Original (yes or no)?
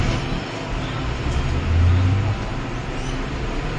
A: yes